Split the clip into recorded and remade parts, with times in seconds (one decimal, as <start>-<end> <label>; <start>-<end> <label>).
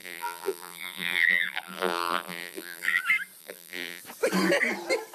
0.0-3.0 remade; 3.0-3.4 recorded; 3.4-4.0 remade; 4.0-5.1 recorded